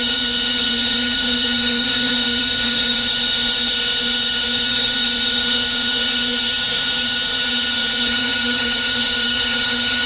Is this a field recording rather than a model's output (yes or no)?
no